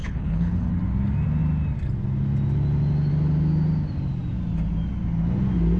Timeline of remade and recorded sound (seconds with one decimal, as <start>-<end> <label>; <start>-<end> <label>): 0.0-0.7 remade; 0.7-5.8 recorded